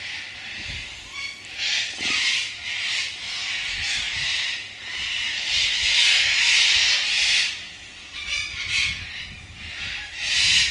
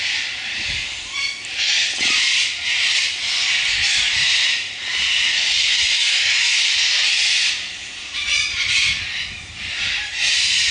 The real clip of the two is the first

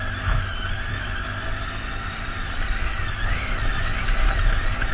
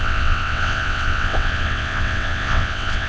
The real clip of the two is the first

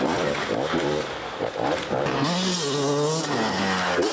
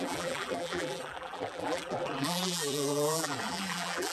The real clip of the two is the first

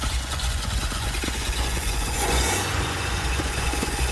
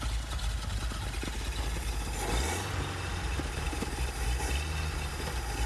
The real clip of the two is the second